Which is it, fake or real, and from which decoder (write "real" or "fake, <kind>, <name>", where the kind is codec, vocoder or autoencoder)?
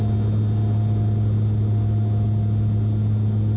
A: real